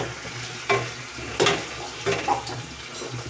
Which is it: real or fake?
real